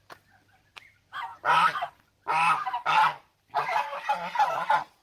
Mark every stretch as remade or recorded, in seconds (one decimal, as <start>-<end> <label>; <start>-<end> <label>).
0.0-5.0 recorded